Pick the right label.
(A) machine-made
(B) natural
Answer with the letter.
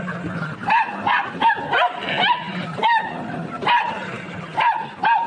B